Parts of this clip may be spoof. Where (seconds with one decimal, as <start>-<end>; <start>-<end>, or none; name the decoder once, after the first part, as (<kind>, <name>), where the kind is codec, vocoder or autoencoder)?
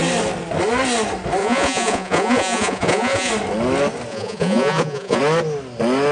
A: 1.4-3.3 (vocoder, Vocos); 4.1-5.2